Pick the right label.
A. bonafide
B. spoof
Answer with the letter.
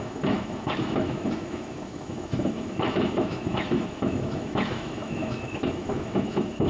B